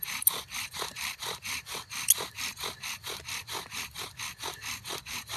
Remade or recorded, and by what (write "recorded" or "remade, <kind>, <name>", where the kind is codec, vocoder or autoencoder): recorded